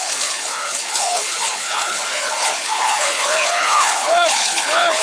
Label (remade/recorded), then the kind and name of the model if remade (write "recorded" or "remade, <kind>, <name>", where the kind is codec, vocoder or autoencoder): remade, codec, HILCodec